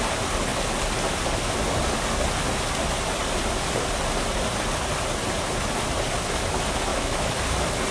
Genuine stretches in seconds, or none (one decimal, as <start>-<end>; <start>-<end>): 0.0-6.9; 7.4-7.9